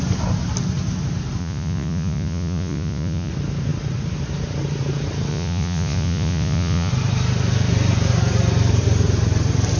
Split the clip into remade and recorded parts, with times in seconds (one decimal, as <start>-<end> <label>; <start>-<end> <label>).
0.0-1.4 recorded; 1.4-3.3 remade; 3.3-5.3 recorded; 5.3-6.9 remade; 6.9-9.8 recorded